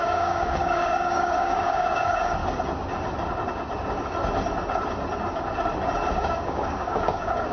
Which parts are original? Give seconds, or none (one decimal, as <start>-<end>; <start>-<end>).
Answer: 2.4-6.1